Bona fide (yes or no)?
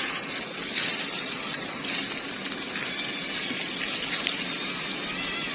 yes